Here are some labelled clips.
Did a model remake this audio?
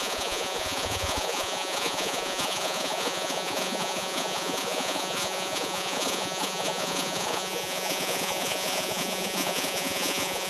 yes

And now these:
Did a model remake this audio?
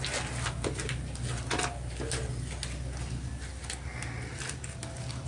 no